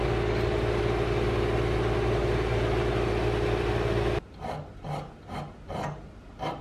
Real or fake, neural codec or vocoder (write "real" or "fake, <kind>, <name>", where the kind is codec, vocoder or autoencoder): real